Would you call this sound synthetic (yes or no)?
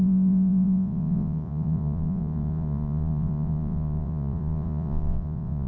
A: yes